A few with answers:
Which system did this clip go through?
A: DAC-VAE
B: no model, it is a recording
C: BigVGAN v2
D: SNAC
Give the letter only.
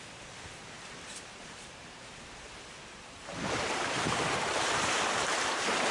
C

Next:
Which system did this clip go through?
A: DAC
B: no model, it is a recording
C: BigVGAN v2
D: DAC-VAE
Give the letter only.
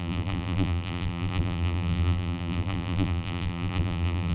C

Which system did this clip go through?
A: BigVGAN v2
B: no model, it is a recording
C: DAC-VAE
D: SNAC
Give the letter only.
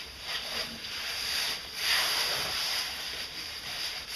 A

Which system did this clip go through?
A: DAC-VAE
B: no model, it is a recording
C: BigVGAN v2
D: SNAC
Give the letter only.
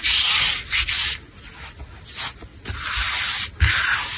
B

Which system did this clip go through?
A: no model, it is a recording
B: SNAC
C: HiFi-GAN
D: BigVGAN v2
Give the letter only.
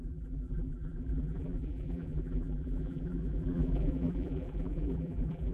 D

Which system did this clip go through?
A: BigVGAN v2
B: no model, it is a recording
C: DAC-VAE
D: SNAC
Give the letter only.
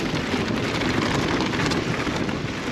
B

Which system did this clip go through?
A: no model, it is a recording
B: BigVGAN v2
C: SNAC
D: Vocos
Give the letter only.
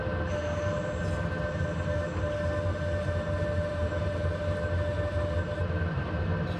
A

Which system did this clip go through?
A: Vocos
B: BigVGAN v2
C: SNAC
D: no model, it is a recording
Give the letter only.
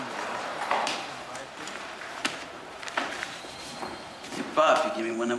B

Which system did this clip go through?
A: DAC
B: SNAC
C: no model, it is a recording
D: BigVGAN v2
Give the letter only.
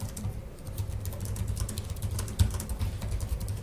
C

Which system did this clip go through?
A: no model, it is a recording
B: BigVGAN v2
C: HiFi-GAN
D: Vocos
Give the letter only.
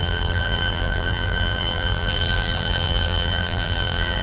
B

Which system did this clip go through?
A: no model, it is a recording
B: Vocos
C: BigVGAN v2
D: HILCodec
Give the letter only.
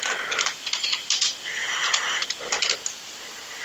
A